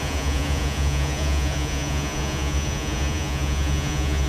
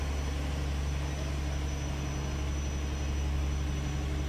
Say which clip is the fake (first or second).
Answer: first